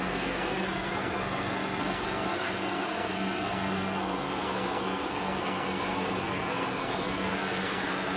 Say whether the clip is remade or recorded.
remade